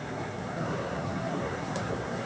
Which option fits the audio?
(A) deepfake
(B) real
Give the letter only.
A